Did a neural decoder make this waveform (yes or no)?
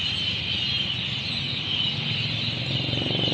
no